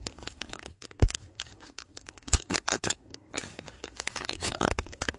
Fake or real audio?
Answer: fake